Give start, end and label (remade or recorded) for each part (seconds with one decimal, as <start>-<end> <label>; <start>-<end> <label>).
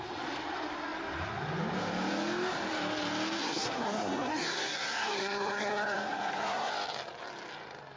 0.0-3.4 recorded; 3.4-6.7 remade; 6.7-8.0 recorded